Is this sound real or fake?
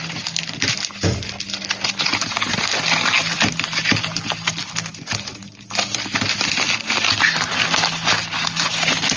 real